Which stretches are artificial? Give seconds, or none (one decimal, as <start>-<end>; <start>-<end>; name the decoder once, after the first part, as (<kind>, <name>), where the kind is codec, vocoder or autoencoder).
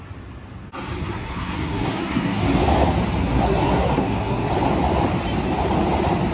1.0-2.4 (codec, SNAC); 3.2-4.5